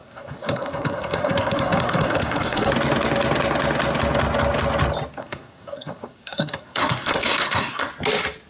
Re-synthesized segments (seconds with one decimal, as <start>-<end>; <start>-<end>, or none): 0.0-2.7; 5.2-7.9